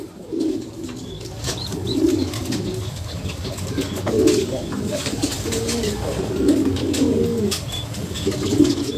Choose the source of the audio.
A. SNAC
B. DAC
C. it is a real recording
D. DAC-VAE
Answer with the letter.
B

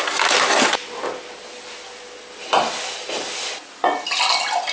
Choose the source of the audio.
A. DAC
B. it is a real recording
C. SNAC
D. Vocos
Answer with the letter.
B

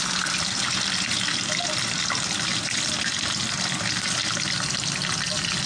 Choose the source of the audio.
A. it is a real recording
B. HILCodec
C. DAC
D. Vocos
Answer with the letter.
A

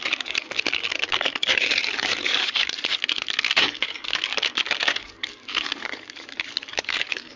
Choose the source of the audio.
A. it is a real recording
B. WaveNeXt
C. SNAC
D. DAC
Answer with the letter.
D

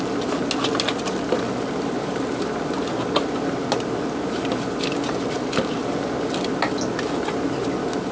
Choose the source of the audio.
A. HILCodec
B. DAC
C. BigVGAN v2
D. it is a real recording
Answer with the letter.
D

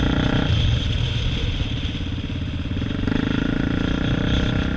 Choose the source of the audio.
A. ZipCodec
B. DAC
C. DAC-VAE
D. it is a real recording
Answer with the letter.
D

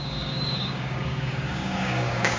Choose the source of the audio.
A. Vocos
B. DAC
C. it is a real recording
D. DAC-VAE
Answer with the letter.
B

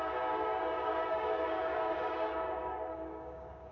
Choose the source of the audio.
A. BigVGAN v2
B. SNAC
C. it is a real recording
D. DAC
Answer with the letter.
D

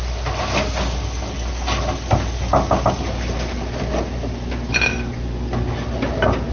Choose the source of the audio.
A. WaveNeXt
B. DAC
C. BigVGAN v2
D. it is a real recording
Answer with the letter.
D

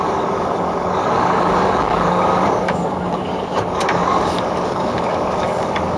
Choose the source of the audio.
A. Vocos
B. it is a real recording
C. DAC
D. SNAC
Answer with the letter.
C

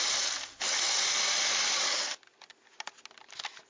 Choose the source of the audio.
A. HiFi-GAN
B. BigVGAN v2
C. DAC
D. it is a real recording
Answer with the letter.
D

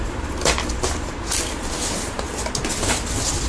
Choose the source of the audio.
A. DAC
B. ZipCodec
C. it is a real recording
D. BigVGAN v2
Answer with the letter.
C